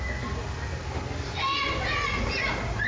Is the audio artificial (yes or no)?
no